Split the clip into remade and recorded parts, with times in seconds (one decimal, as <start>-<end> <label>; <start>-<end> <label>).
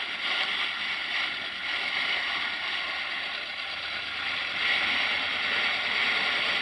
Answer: 0.0-1.0 recorded; 1.0-4.5 remade; 4.5-6.6 recorded